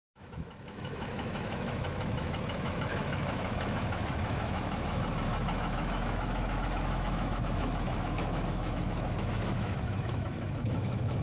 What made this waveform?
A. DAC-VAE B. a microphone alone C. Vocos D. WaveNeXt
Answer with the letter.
A